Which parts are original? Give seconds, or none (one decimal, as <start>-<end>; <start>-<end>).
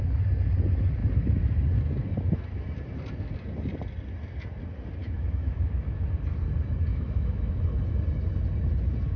0.0-5.0; 6.0-6.9; 7.5-9.2